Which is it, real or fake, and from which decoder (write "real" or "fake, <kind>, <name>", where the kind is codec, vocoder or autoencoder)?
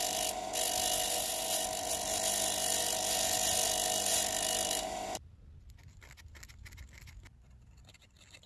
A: real